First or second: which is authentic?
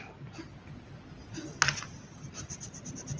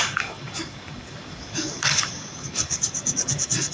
first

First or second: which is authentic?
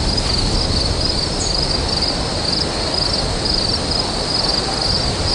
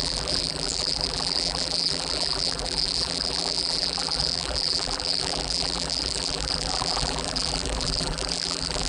first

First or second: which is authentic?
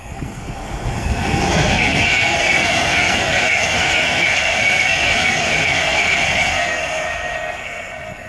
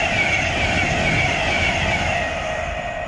second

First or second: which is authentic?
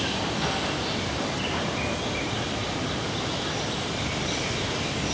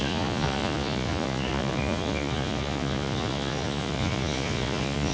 first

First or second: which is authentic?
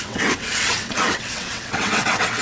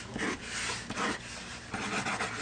second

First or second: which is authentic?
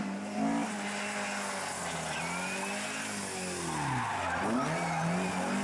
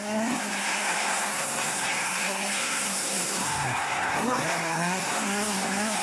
first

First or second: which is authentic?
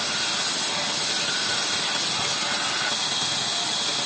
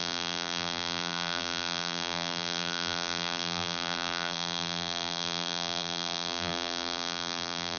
first